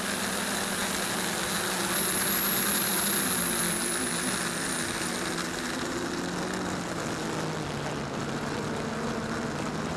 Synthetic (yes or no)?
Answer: no